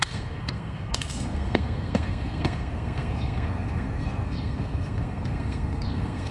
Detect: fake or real fake